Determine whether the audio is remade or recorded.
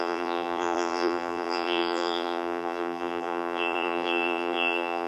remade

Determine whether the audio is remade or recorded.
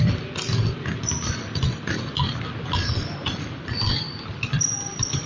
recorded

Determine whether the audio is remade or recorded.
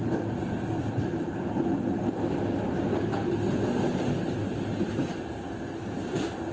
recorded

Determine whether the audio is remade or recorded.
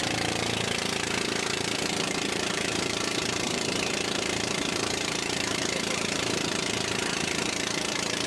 remade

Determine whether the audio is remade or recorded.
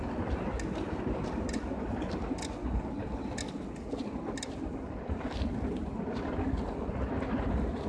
recorded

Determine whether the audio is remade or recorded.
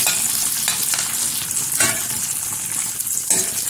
recorded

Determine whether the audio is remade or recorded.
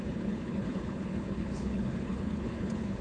remade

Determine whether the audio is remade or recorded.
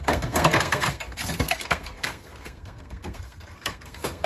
remade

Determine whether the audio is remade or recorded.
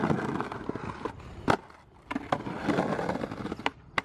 recorded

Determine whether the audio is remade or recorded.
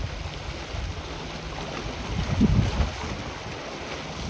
recorded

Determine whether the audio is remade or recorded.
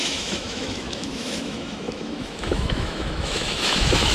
remade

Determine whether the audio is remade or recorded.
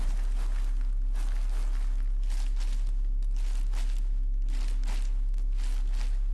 recorded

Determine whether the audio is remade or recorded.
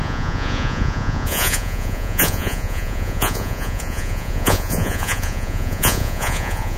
remade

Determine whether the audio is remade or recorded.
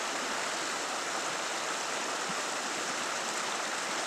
recorded